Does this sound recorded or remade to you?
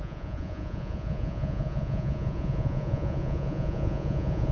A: remade